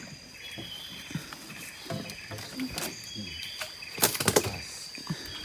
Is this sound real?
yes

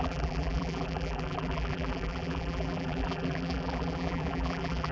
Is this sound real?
no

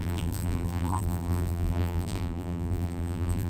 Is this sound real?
no